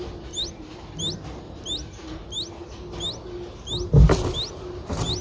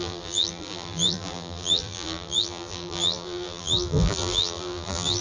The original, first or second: first